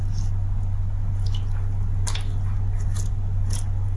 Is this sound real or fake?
real